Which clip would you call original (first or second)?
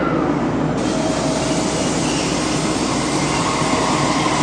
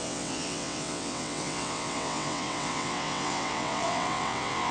first